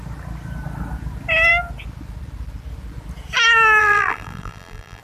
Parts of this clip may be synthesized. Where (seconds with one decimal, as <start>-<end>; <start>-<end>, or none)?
3.8-5.0